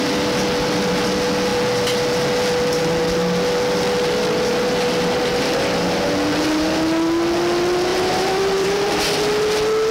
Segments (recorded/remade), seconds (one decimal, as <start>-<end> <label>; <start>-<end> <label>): 0.0-7.9 recorded; 7.9-8.9 remade; 8.9-9.9 recorded